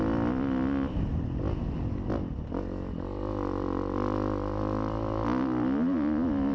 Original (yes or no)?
yes